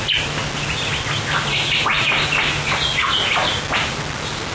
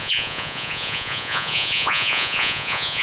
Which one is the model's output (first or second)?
second